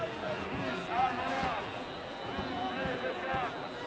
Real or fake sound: fake